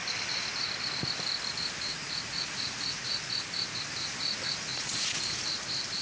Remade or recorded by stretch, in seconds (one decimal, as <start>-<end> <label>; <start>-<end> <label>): 0.0-1.9 recorded; 1.9-3.1 remade; 3.1-4.7 recorded; 4.7-5.4 remade; 5.4-6.0 recorded